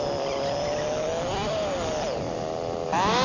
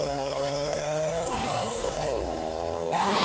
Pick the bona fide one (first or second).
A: first